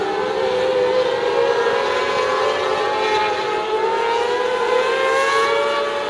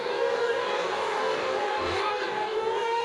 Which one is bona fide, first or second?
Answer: first